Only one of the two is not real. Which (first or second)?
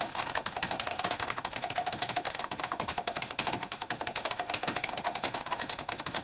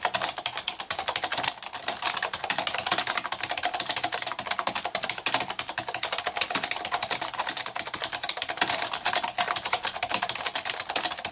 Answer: first